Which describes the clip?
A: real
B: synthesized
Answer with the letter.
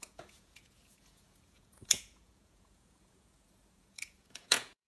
B